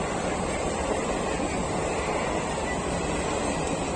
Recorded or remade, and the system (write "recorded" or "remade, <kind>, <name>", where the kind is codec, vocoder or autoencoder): recorded